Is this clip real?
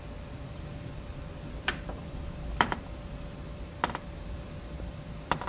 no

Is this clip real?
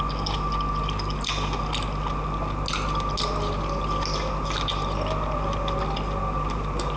yes